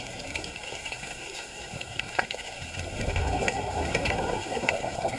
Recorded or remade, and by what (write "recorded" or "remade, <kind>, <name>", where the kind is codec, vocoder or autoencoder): remade, codec, SNAC